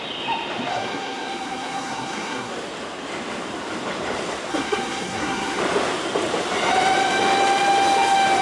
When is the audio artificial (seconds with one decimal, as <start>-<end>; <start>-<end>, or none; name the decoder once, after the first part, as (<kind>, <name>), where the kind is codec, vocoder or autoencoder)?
0.7-2.5 (codec, SNAC); 4.5-5.6